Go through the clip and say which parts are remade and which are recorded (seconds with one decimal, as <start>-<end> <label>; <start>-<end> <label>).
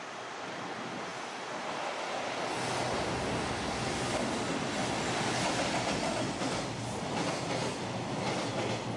0.0-9.0 recorded